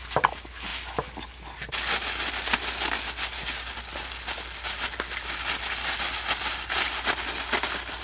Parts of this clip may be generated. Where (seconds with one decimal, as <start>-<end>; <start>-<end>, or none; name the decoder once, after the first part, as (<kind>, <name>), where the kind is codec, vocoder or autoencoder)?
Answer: none